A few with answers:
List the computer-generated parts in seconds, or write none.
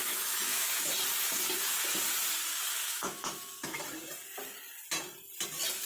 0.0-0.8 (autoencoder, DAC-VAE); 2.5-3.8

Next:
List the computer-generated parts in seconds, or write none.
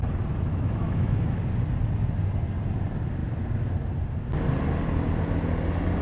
0.5-1.4 (autoencoder, DAC-VAE)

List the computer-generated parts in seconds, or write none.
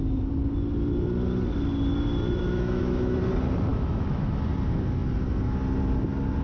2.4-3.2 (autoencoder, DAC-VAE); 3.7-4.4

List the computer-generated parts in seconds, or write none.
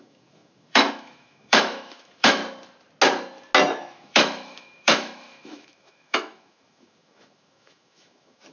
0.0-2.4 (autoencoder, DAC-VAE); 3.7-8.5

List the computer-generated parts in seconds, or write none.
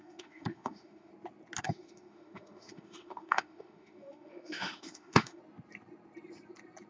0.0-1.1 (autoencoder, DAC-VAE); 1.6-5.4